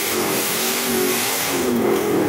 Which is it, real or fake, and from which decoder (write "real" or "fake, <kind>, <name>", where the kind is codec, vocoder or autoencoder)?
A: fake, codec, DAC